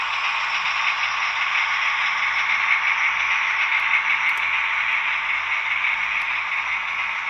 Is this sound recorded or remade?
recorded